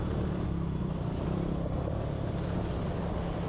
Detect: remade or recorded recorded